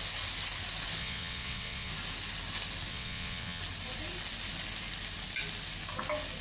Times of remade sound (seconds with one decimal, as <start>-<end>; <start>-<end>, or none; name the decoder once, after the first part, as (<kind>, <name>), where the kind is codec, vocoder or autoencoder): 1.0-1.9 (vocoder, WaveNeXt); 2.9-3.6